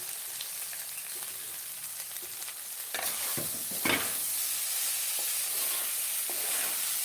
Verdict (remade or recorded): recorded